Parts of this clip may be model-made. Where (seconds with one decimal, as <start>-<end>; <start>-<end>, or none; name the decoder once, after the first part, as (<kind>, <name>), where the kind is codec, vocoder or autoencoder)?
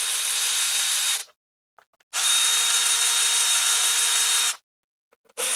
none